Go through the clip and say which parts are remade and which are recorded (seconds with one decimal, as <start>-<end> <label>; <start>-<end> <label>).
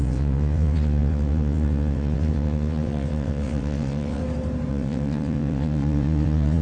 0.0-4.2 remade; 4.2-4.7 recorded; 4.7-6.6 remade